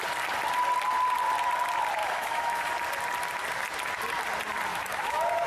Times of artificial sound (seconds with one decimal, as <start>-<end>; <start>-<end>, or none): 2.0-2.7; 4.7-5.5